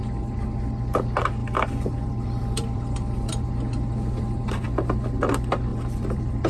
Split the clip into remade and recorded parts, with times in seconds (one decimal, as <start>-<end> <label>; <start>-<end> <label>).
0.0-1.4 recorded; 1.4-3.5 remade; 3.5-5.7 recorded; 5.7-6.5 remade